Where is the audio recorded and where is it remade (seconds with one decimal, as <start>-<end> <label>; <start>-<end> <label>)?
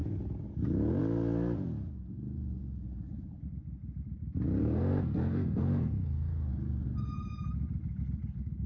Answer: 0.0-4.6 recorded; 4.6-6.5 remade; 6.5-8.7 recorded